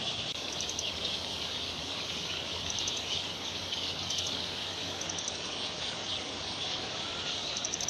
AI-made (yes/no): yes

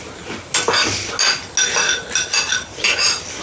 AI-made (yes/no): no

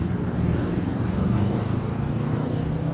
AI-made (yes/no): yes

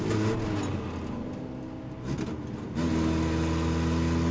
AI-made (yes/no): no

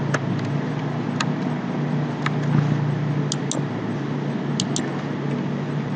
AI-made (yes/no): no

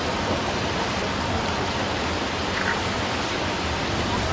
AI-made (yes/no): no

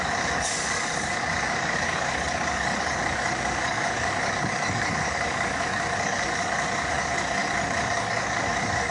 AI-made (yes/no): yes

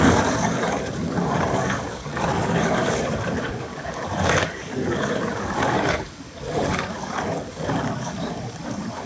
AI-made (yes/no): yes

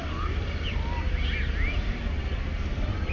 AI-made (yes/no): no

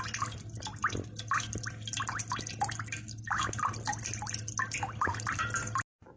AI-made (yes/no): no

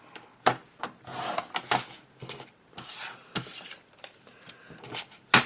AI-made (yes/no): no